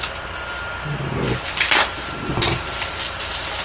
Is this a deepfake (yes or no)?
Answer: no